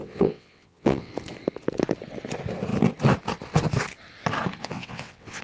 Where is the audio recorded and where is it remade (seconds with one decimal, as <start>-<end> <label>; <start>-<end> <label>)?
0.0-1.1 remade; 1.1-4.6 recorded; 4.6-5.4 remade